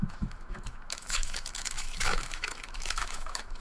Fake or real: fake